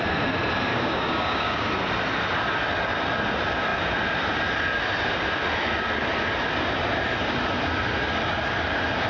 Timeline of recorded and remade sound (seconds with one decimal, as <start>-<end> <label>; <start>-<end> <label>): 0.0-0.7 recorded; 0.7-1.7 remade; 1.7-9.1 recorded

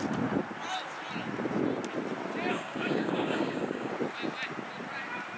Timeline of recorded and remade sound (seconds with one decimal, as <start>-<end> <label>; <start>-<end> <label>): 0.0-2.5 recorded; 2.5-3.9 remade; 3.9-5.4 recorded

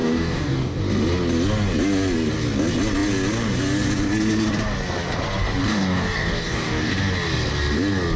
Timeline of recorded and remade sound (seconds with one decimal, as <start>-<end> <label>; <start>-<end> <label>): 0.0-0.8 remade; 0.8-5.6 recorded; 5.6-6.9 remade; 6.9-8.2 recorded

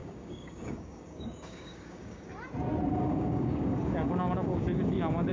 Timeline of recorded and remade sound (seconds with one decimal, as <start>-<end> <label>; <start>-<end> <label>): 0.0-2.3 remade; 2.3-2.9 recorded; 2.9-5.3 remade

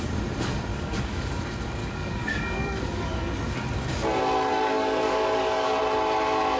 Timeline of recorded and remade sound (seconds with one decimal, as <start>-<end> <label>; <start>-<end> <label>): 0.0-0.7 recorded; 0.7-1.3 remade; 1.3-1.8 recorded; 1.8-3.4 remade; 3.4-4.5 recorded; 4.5-5.8 remade; 5.8-6.6 recorded

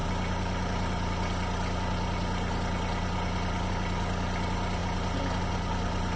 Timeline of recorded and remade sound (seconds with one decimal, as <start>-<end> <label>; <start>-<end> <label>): 0.0-6.2 recorded

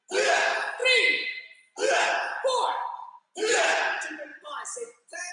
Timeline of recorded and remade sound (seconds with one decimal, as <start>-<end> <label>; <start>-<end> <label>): 0.0-5.3 recorded

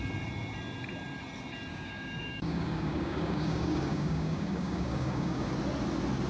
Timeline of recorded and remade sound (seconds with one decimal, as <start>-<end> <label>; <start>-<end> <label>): 0.0-1.7 recorded; 1.7-5.5 remade; 5.5-6.3 recorded